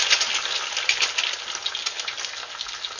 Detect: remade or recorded recorded